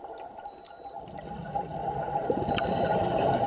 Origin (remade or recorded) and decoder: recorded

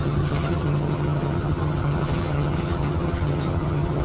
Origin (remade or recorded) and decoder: remade, vocoder, HiFi-GAN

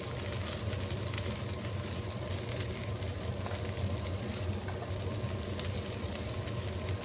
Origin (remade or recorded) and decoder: recorded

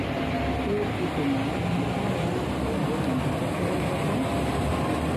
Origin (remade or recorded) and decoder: recorded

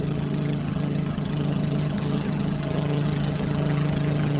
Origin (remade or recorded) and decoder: remade, vocoder, HiFi-GAN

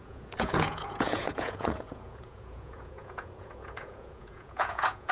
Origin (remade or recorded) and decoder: remade, vocoder, Vocos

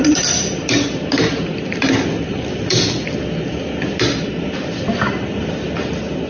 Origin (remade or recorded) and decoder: recorded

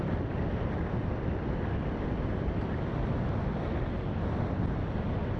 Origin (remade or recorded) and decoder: recorded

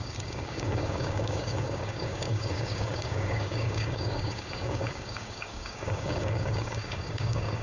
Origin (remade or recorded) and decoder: remade, codec, DAC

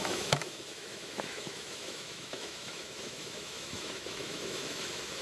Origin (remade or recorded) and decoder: remade, autoencoder, DAC-VAE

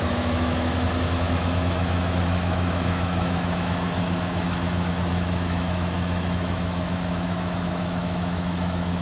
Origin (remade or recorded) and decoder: remade, autoencoder, DAC-VAE